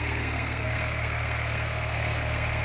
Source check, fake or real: fake